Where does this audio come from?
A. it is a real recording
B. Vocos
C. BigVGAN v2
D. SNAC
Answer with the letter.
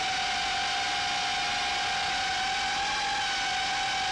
A